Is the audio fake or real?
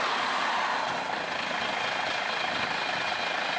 real